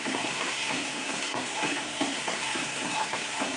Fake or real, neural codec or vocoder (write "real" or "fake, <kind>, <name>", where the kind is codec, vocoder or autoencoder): fake, codec, SNAC